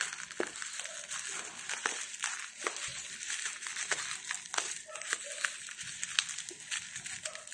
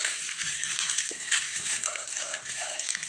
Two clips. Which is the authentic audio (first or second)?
first